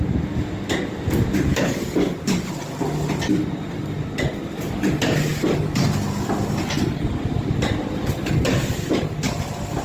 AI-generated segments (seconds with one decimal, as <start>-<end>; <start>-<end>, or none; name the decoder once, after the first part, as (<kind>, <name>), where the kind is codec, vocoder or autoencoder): 1.5-2.1 (codec, DAC)